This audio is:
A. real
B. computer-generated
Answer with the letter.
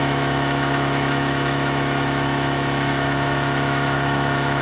B